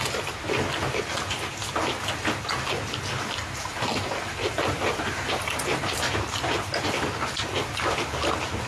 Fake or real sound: real